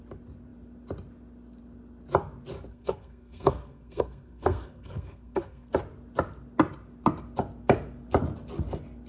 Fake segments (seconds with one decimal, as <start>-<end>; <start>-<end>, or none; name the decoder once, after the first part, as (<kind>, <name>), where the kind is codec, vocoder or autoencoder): 2.7-5.7 (codec, SNAC)